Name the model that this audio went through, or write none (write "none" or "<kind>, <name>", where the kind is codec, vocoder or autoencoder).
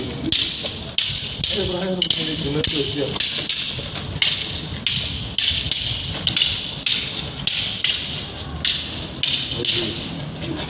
none